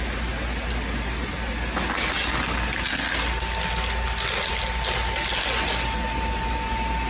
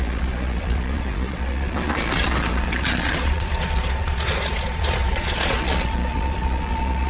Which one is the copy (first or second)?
second